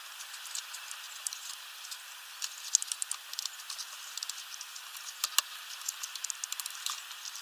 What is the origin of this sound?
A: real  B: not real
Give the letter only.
A